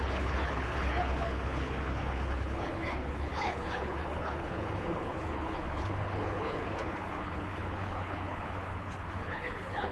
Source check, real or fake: fake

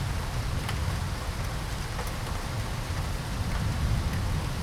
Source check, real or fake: real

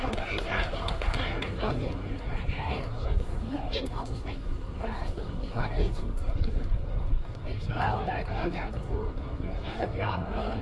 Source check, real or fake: fake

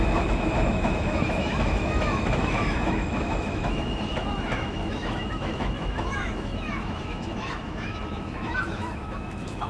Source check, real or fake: fake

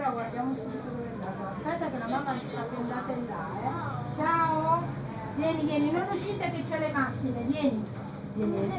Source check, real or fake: real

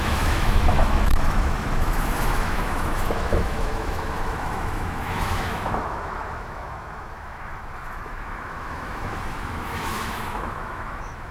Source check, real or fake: fake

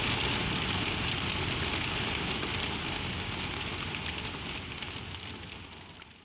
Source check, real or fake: real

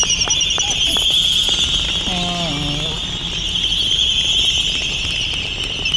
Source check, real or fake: real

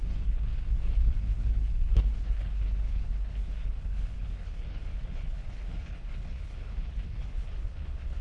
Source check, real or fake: fake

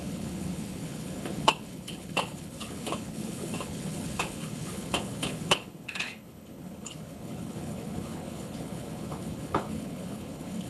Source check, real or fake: fake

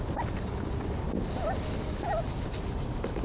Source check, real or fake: real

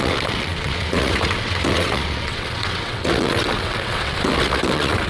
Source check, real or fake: fake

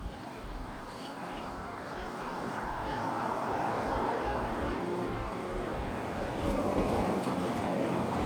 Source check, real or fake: fake